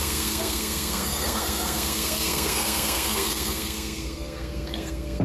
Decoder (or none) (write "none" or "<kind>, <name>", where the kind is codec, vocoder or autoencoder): codec, SNAC